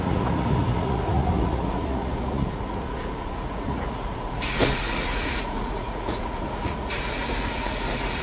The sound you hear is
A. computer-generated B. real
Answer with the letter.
A